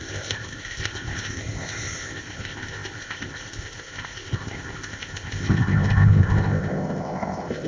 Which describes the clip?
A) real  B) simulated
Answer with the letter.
B